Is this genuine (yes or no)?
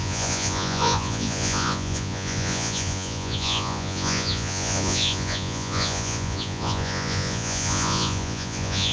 no